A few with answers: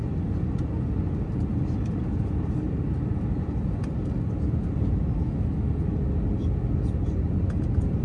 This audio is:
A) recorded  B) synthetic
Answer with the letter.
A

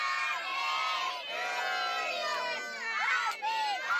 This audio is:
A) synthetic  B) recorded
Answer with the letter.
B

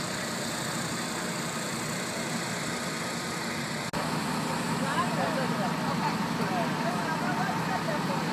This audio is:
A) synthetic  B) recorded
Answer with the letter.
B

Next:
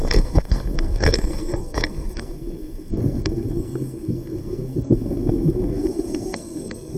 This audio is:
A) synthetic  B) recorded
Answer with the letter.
A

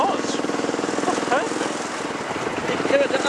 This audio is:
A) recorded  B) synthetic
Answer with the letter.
A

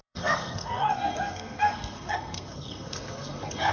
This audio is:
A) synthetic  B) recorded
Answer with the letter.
A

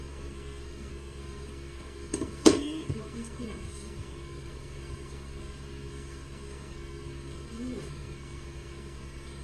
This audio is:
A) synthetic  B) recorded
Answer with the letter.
A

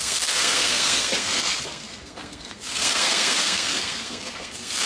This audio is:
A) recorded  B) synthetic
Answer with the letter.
B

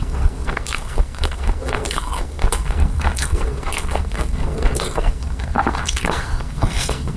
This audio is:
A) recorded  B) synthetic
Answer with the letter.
B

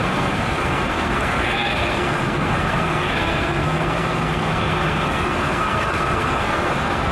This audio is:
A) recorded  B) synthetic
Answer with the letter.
B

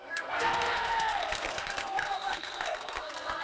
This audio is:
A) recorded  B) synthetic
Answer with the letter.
B